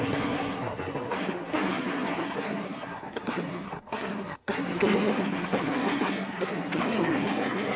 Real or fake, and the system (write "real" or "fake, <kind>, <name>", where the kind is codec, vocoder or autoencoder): fake, codec, SNAC